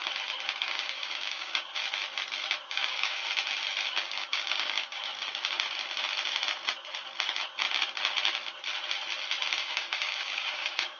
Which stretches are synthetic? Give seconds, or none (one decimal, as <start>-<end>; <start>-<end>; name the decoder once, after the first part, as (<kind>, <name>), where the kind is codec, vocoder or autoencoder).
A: 0.6-1.8 (codec, DAC); 2.7-3.2; 3.9-5.1; 9.5-11.0